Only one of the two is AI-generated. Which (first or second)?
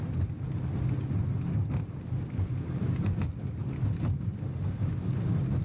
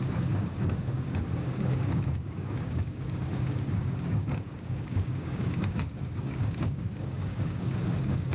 second